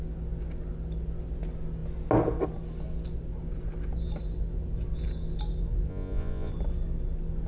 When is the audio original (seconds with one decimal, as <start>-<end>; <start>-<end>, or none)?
0.0-5.9; 6.5-7.5